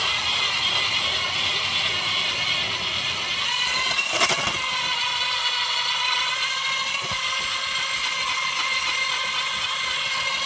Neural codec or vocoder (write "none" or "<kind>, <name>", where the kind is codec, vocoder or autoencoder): none